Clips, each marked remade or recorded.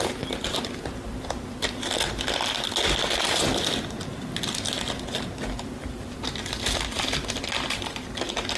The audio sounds recorded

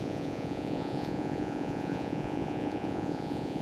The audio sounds remade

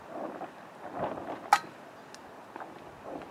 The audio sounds recorded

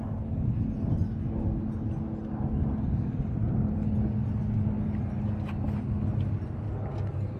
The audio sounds recorded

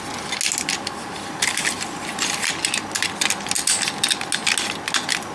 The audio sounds recorded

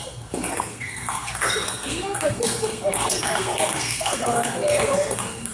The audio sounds remade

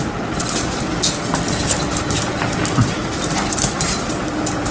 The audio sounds recorded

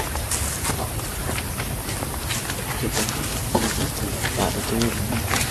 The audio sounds recorded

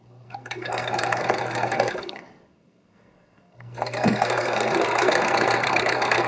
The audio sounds remade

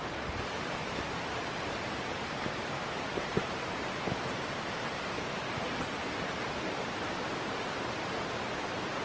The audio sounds remade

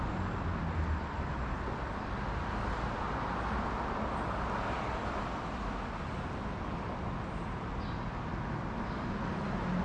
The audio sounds recorded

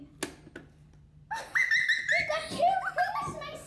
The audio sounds recorded